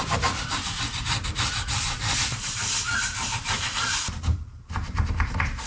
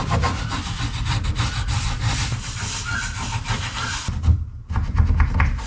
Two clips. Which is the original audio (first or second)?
second